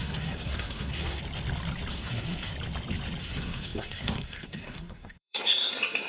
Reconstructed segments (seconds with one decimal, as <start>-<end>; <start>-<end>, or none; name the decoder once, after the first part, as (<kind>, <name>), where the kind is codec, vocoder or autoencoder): 0.0-1.2 (codec, SNAC); 1.9-2.5; 3.2-6.1

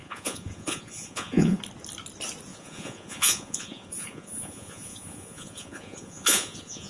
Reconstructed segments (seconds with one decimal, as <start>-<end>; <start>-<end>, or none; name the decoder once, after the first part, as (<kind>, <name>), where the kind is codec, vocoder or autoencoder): 0.0-1.6 (vocoder, Vocos); 2.5-6.9